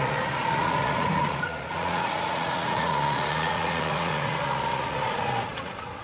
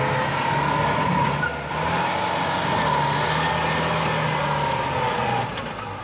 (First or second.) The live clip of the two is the second